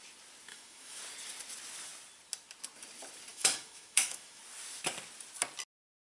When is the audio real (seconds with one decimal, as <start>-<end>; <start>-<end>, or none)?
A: 0.0-0.5; 1.0-3.3; 4.4-6.2